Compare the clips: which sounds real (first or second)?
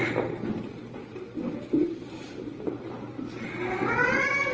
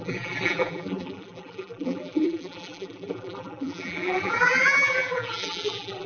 first